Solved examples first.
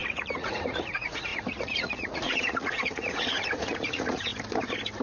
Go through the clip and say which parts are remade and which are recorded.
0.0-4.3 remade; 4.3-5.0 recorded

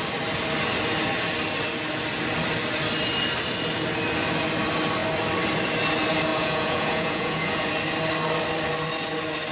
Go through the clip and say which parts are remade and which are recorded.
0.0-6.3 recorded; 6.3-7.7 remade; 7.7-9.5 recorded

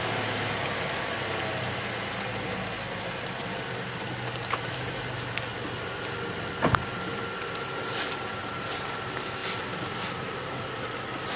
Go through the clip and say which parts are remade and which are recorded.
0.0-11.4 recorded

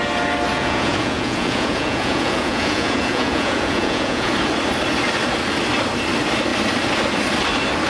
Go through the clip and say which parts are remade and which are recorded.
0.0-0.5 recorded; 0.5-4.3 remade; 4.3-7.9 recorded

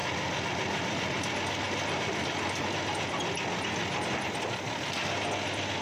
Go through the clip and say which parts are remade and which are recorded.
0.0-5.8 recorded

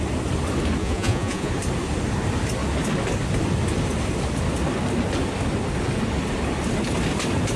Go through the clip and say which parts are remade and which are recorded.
0.0-0.8 recorded; 0.8-1.5 remade; 1.5-7.6 recorded